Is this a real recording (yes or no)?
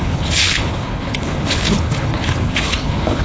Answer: no